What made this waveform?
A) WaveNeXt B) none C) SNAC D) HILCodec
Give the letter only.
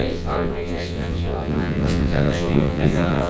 A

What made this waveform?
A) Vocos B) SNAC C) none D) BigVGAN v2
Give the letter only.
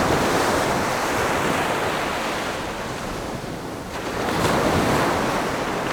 C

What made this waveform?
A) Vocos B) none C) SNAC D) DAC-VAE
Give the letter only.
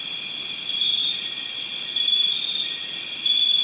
B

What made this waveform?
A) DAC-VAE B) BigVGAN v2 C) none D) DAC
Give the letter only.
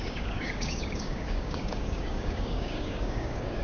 D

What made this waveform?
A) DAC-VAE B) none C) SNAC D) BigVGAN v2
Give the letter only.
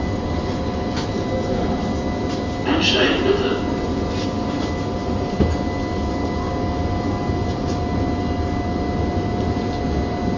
B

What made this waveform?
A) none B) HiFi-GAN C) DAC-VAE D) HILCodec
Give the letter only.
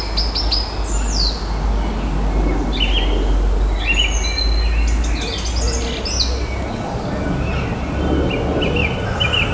A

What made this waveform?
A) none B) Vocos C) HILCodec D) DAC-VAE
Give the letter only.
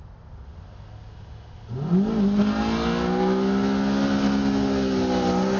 A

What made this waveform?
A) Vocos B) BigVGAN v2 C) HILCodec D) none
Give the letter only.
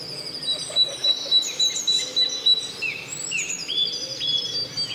D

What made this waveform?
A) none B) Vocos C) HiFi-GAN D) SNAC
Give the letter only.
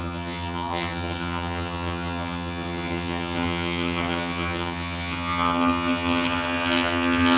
C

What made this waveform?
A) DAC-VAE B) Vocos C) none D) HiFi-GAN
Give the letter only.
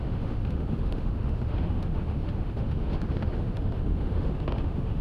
A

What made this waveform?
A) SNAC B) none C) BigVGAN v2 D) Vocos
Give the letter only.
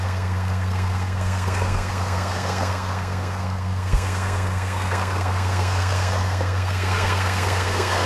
A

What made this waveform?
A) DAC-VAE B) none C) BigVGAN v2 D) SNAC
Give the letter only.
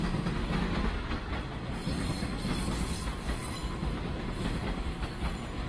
B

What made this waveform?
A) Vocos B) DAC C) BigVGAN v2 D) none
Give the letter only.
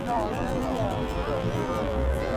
C